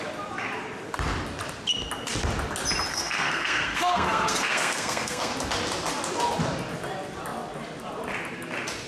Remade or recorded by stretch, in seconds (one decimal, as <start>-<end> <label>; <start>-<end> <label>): 0.0-2.9 recorded; 2.9-5.3 remade; 5.3-8.9 recorded